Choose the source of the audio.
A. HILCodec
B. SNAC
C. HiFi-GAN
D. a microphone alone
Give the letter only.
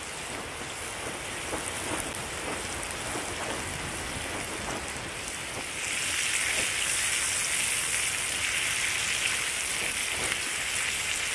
D